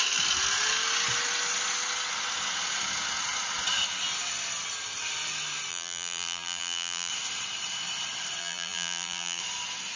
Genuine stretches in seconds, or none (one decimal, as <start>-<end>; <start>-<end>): 0.0-5.7; 7.1-8.4; 9.4-10.0